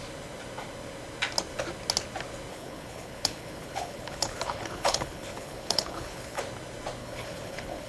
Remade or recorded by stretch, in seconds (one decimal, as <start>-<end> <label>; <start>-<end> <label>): 0.0-2.5 recorded; 2.5-6.4 remade; 6.4-7.0 recorded; 7.0-7.9 remade